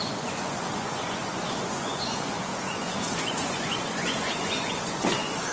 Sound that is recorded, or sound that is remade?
remade